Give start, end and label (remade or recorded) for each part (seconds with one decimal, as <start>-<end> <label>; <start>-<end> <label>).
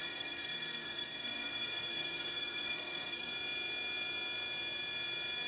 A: 0.0-3.3 remade; 3.3-5.5 recorded